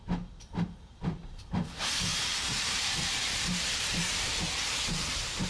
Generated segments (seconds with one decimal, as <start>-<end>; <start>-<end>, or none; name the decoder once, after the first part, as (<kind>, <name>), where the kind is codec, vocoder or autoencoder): 2.1-5.5 (vocoder, BigVGAN v2)